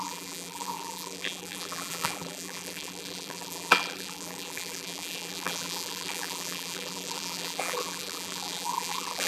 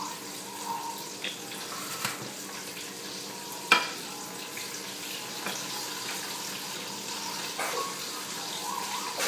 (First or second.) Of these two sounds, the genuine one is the second